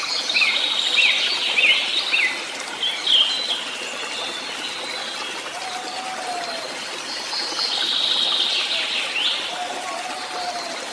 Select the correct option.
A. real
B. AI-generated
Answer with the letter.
A